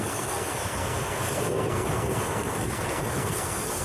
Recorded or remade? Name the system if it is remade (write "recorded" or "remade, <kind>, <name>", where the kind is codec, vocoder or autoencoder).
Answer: remade, codec, SNAC